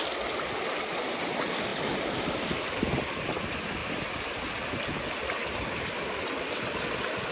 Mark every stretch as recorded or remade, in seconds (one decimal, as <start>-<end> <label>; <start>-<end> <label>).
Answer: 0.0-1.7 recorded; 1.7-3.4 remade; 3.4-3.8 recorded; 3.8-5.0 remade; 5.0-5.4 recorded; 5.4-6.8 remade; 6.8-7.3 recorded